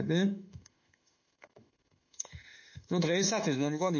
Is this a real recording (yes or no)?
no